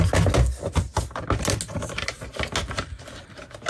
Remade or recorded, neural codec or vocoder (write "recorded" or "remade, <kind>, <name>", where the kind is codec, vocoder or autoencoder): recorded